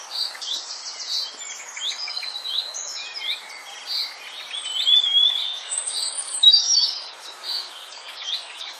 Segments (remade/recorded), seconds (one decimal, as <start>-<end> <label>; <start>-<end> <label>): 0.0-0.8 remade; 0.8-1.6 recorded; 1.6-3.0 remade; 3.0-5.0 recorded; 5.0-8.8 remade